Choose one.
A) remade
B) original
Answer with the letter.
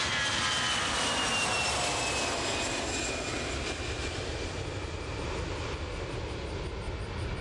B